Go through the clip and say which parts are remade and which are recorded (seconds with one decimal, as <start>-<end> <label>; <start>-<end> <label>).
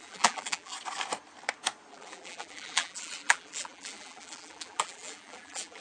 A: 0.0-0.7 remade; 0.7-1.9 recorded; 1.9-5.8 remade